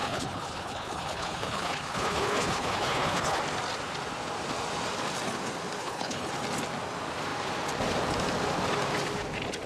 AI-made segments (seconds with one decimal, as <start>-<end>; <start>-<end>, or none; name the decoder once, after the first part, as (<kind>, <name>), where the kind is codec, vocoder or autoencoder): 0.0-3.4 (codec, HILCodec); 5.8-6.3